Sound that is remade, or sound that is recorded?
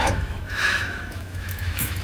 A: remade